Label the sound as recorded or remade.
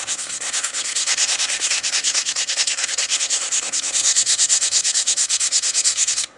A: remade